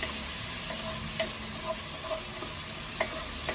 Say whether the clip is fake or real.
real